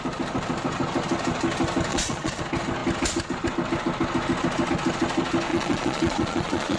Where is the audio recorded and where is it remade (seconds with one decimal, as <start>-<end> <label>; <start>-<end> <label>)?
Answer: 0.0-1.9 recorded; 1.9-2.4 remade; 2.4-5.5 recorded; 5.5-6.8 remade